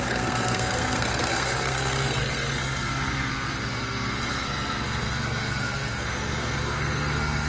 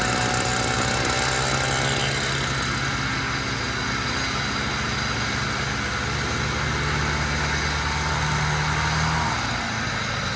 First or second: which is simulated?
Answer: first